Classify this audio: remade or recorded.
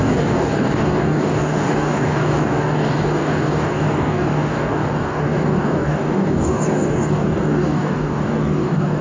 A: remade